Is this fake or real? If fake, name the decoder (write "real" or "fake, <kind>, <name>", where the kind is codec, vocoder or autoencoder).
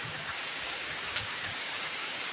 fake, codec, DAC